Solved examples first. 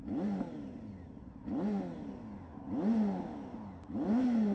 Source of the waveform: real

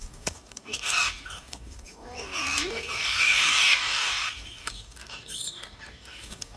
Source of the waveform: fake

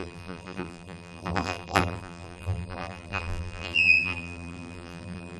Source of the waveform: fake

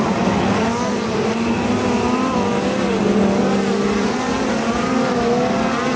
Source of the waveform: real